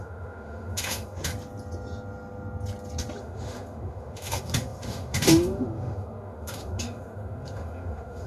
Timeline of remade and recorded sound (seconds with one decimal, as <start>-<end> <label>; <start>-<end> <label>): 0.0-1.3 remade; 1.3-3.2 recorded; 3.2-8.3 remade